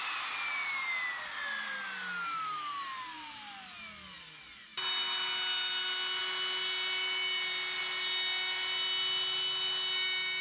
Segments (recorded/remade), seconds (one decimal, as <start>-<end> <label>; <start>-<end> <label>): 0.0-10.4 recorded